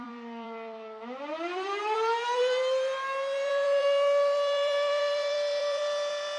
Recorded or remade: remade